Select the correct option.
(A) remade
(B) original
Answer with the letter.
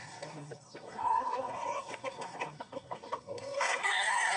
A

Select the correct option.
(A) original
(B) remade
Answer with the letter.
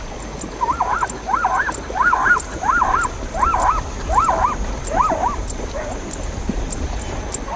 A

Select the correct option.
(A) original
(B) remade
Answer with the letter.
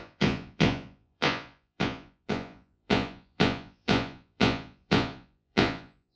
B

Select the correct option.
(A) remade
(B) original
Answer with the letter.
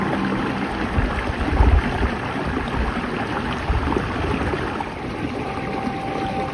B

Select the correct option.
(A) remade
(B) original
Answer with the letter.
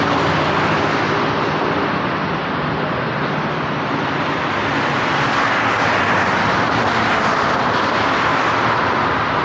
B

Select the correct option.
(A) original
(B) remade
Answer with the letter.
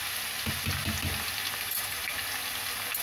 A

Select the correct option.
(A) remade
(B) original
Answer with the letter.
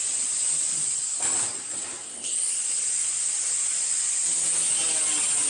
B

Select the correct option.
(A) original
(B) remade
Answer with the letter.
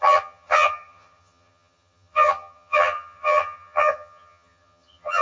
B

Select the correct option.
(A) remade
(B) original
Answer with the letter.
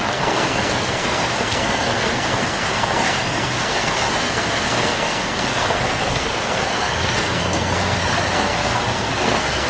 A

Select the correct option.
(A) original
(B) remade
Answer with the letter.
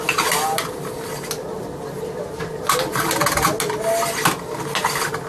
A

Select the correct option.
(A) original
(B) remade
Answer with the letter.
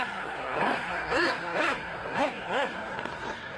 B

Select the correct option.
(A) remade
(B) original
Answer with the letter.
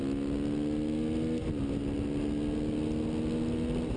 B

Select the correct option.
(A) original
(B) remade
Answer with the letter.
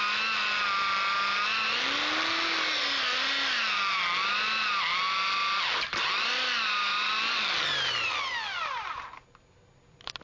A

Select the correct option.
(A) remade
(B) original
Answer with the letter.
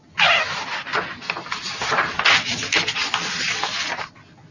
B